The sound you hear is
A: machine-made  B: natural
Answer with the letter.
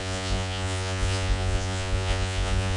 A